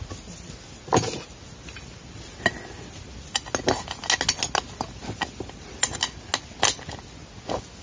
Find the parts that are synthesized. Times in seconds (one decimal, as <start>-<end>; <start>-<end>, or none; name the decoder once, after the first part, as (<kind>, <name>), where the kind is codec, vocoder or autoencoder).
none